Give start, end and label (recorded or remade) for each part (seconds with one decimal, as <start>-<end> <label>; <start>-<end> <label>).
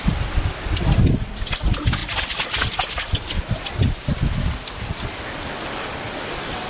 0.0-6.7 recorded